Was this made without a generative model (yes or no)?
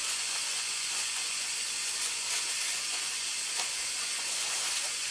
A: no